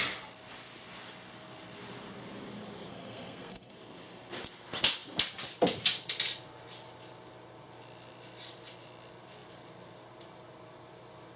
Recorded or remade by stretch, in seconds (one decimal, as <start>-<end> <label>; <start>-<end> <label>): 0.0-2.9 recorded; 2.9-3.7 remade; 3.7-11.4 recorded